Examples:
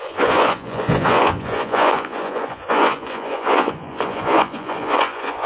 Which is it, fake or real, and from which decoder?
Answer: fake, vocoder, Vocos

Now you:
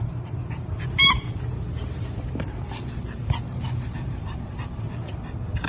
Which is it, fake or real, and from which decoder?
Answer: fake, vocoder, BigVGAN v2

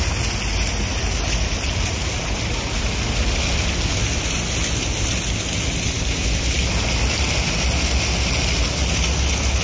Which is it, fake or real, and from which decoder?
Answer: real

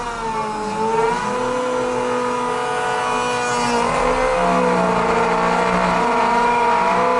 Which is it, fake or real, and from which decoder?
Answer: real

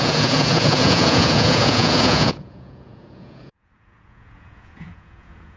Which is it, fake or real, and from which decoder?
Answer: fake, vocoder, Vocos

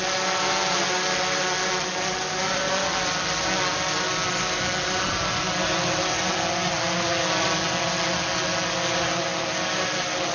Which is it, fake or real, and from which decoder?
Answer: real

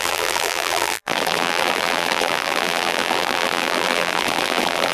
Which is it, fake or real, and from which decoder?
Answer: fake, vocoder, BigVGAN v2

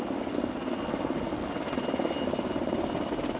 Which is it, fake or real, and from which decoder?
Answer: real